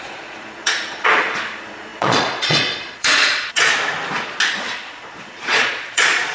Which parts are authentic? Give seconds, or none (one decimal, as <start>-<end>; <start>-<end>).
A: 3.7-4.5